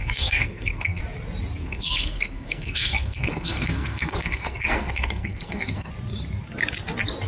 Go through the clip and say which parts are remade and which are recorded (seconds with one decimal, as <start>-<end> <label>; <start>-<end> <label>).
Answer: 0.0-1.0 remade; 1.0-1.6 recorded; 1.6-5.9 remade; 5.9-7.3 recorded